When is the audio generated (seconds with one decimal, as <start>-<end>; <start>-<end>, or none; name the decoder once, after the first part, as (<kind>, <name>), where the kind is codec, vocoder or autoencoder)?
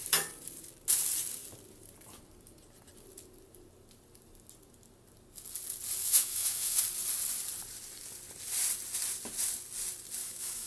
6.0-6.8 (autoencoder, DAC-VAE); 10.2-10.7